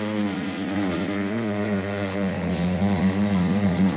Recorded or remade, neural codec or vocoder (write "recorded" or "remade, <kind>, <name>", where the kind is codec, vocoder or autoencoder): remade, vocoder, Vocos